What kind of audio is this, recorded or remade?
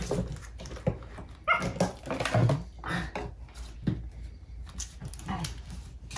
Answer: recorded